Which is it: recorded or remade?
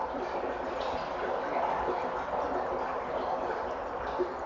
recorded